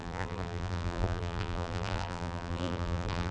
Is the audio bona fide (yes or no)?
no